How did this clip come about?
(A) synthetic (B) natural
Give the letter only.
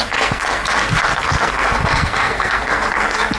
A